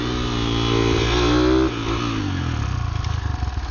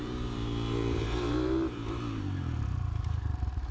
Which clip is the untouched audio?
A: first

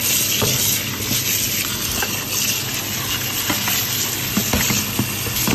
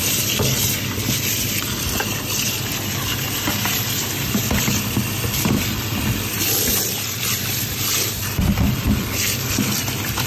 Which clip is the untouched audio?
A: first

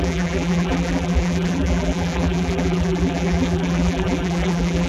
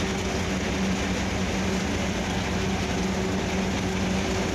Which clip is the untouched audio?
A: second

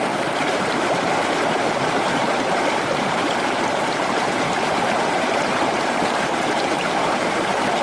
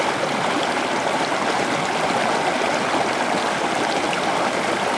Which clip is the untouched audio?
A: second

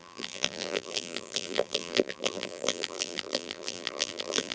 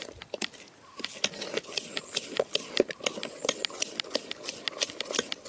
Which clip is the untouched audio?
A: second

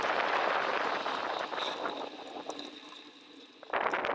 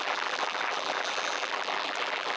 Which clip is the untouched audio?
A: first